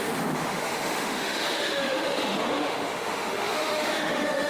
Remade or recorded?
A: remade